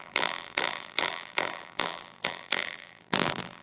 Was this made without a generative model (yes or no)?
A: no